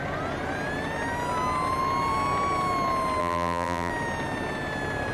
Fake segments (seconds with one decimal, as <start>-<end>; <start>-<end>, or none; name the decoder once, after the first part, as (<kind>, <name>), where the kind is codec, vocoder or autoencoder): 3.2-3.9 (vocoder, BigVGAN v2)